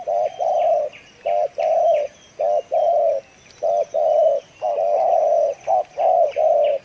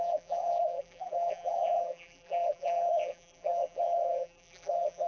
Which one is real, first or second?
first